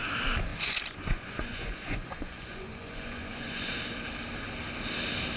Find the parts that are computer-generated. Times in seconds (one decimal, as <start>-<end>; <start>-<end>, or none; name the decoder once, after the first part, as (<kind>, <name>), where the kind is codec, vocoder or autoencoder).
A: 0.5-3.7 (vocoder, Vocos)